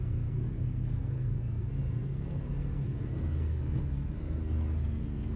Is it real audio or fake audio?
fake